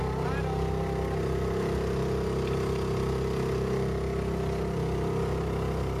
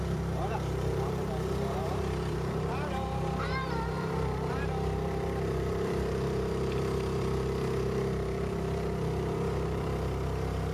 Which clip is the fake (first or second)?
second